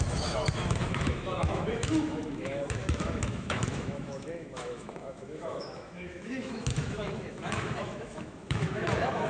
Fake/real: fake